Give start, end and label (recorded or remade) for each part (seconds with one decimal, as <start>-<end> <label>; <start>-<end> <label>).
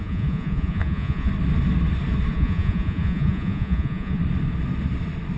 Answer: 0.0-1.3 remade; 1.3-2.3 recorded; 2.3-4.2 remade; 4.2-5.4 recorded